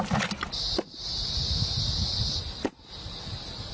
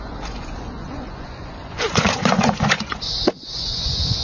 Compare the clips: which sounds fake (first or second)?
second